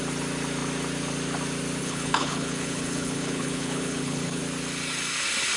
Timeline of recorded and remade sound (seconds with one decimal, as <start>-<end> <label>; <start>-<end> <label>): 0.0-1.8 recorded; 1.8-4.4 remade; 4.4-5.6 recorded